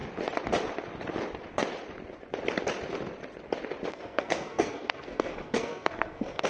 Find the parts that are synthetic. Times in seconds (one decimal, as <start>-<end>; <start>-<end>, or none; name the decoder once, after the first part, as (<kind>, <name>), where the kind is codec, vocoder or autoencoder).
3.9-6.5 (codec, SNAC)